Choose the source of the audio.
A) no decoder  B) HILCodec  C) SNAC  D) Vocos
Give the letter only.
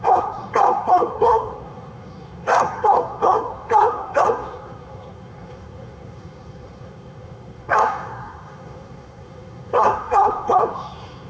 C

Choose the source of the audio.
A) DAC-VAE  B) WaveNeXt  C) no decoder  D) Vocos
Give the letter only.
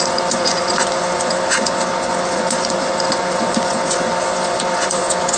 D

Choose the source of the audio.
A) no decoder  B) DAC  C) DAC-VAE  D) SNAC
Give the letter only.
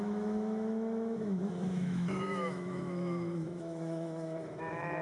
C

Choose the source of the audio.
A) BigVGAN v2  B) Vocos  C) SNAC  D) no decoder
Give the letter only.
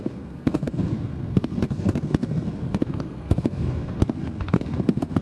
C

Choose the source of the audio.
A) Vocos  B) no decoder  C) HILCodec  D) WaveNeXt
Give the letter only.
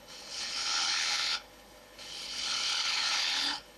C